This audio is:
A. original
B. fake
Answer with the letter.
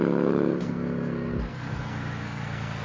B